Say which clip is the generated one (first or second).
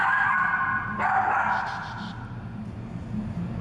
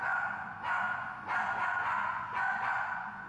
second